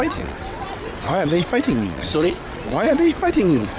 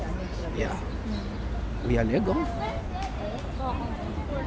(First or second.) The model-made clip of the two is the first